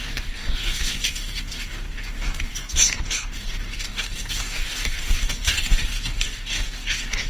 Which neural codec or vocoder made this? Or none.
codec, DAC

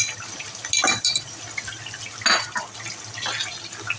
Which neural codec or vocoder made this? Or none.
none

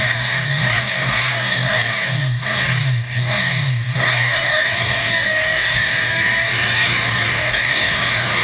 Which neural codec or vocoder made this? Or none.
codec, DAC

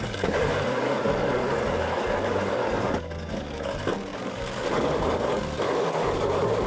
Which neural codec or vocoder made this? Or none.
codec, DAC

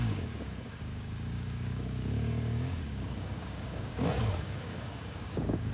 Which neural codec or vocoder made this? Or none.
codec, DAC